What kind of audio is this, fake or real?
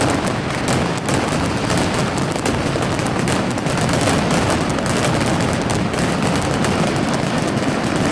real